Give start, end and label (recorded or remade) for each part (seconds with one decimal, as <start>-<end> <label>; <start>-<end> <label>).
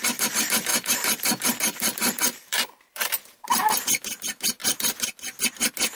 0.0-0.7 recorded; 0.7-3.8 remade; 3.8-6.0 recorded